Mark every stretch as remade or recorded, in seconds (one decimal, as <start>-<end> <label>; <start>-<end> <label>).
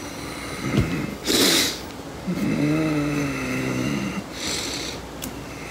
0.0-1.1 recorded; 1.1-1.9 remade; 1.9-5.7 recorded